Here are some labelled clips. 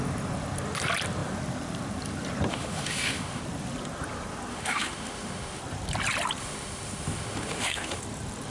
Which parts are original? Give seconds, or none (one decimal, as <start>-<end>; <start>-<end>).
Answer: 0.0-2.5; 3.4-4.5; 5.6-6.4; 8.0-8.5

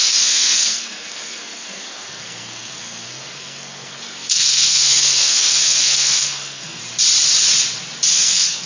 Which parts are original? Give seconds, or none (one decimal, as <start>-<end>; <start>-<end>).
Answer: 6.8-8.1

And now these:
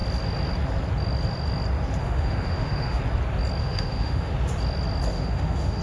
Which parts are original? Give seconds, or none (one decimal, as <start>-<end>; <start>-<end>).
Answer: 0.0-2.0; 3.0-3.6; 4.3-5.1

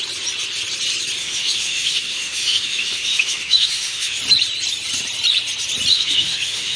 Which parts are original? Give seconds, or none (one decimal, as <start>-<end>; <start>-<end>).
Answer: 0.0-1.2; 4.2-5.9

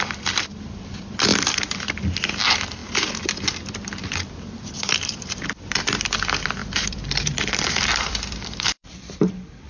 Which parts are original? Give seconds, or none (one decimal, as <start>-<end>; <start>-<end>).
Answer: 1.3-2.3

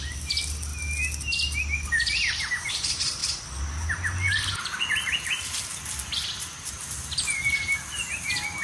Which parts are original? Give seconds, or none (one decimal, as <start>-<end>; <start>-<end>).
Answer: 0.0-8.6

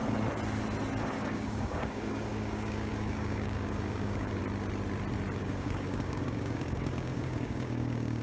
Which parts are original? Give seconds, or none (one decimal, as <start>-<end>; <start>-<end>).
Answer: 0.0-1.0; 4.4-5.4

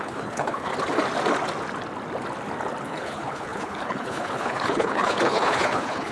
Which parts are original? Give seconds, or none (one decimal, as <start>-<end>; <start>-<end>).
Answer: 0.7-2.8